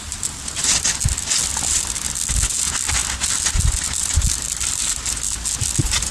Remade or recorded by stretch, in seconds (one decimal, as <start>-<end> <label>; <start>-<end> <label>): 0.0-6.1 recorded